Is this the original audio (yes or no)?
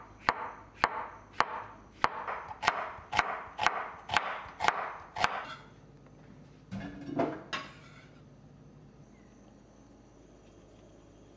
yes